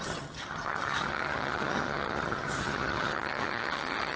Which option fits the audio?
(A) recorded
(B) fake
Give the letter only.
B